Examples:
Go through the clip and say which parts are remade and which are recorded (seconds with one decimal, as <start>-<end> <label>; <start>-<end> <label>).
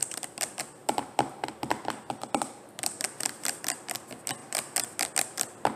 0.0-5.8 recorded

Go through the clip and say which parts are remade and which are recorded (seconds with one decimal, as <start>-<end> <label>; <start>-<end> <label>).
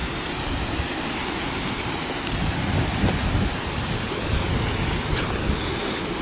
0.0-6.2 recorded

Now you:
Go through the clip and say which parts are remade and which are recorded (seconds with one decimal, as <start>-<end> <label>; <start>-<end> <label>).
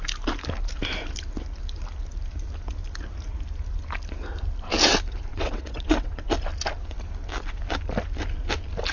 0.0-5.3 recorded; 5.3-6.3 remade; 6.3-8.9 recorded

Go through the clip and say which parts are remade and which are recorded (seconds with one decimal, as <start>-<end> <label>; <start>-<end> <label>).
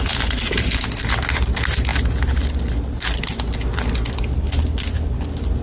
0.0-5.6 recorded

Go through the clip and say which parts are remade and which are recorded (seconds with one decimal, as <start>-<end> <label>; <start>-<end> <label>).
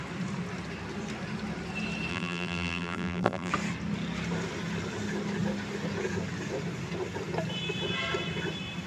0.0-2.1 recorded; 2.1-3.5 remade; 3.5-8.9 recorded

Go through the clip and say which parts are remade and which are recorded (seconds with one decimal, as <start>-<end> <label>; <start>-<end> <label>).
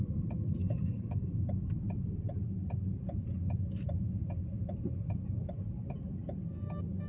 0.0-0.6 recorded; 0.6-1.3 remade; 1.3-7.1 recorded